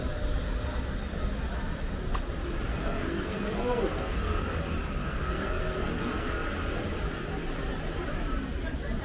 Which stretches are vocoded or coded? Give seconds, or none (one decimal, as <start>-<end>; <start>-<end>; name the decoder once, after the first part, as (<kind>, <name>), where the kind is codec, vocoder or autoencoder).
2.7-4.4 (codec, SNAC); 5.0-6.3